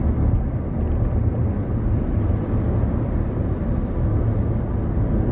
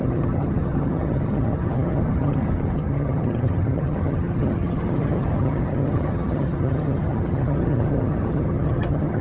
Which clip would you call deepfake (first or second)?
second